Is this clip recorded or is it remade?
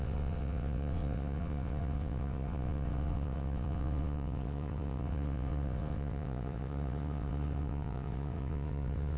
remade